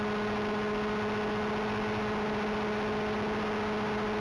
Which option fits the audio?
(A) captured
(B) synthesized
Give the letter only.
A